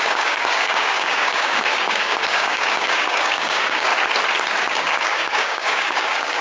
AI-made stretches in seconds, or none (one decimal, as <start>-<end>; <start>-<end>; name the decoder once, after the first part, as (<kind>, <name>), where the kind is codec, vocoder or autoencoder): 0.0-3.9 (codec, DAC); 4.6-6.4